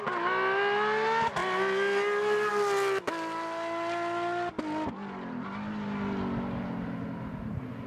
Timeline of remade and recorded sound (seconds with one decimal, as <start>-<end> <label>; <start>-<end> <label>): 0.0-7.9 recorded